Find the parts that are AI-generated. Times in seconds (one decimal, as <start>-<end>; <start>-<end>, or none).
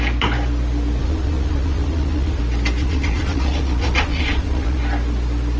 1.0-2.4; 2.8-4.8